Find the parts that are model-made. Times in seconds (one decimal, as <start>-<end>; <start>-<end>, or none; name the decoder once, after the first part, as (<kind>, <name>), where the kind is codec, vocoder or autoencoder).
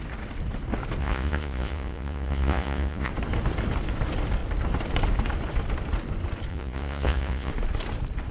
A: 1.0-3.1 (vocoder, Vocos); 6.5-7.5